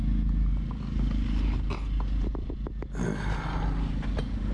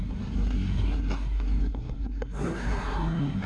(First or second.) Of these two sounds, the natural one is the first